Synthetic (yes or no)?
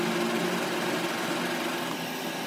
no